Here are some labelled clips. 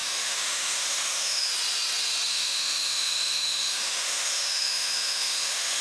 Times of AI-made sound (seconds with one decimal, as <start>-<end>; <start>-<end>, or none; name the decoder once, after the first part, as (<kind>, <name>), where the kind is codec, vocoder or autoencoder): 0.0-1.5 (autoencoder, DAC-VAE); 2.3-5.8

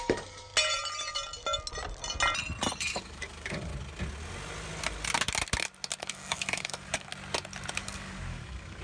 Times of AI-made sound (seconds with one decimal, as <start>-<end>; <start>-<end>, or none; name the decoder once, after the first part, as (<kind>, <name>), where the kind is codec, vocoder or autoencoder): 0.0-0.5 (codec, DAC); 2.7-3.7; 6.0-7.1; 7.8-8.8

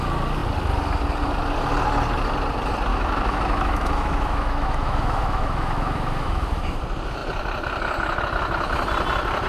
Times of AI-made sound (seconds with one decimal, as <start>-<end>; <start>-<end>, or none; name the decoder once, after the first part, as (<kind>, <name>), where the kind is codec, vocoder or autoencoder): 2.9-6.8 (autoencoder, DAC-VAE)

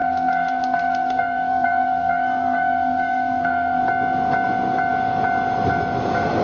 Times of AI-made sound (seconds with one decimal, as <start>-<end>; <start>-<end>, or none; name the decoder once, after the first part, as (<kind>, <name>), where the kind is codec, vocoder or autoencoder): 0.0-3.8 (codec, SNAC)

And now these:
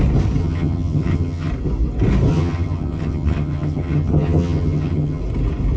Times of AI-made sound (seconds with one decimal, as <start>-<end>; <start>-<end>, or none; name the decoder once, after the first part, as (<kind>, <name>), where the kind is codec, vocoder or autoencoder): 0.4-1.5 (vocoder, HiFi-GAN); 2.3-5.2